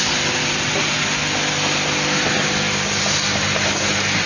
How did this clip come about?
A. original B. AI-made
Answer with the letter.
A